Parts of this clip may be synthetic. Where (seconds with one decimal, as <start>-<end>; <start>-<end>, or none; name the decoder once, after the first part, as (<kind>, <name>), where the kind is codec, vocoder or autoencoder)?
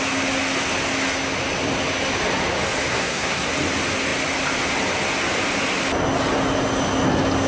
2.9-3.5 (codec, SNAC)